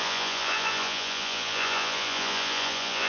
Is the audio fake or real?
fake